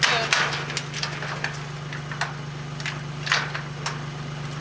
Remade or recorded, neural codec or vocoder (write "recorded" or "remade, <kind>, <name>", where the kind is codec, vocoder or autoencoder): recorded